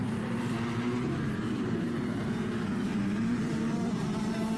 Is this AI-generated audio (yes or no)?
yes